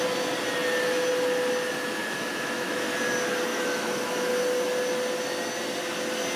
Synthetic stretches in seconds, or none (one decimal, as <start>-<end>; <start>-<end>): 2.0-2.9; 3.5-4.3